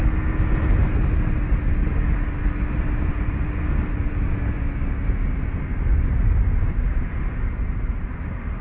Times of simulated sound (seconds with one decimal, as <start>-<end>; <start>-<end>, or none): 0.8-1.4; 5.9-8.6

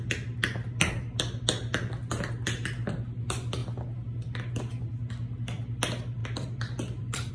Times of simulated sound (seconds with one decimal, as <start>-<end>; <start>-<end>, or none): 6.2-7.3

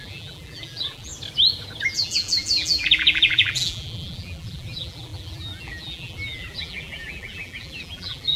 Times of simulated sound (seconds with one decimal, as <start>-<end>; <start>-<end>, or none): 0.0-1.1; 1.9-8.4

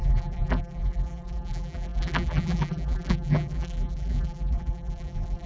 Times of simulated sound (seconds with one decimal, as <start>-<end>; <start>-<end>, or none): 0.0-5.5